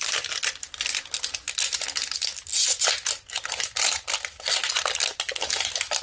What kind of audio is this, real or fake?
real